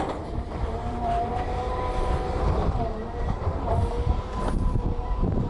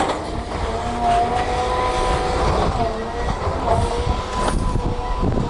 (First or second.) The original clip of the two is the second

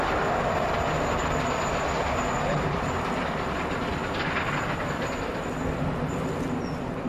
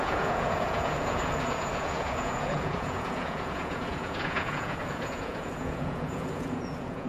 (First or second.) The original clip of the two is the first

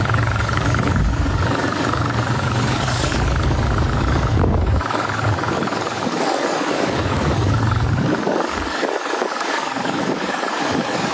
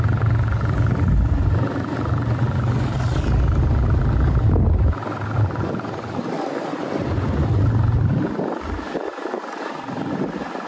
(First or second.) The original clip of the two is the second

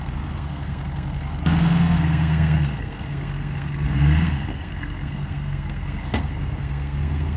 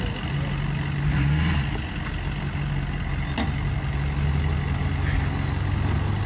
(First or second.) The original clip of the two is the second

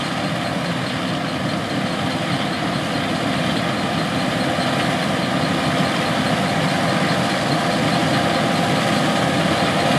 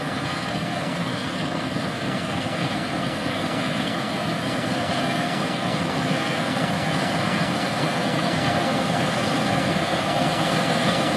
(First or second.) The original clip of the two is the first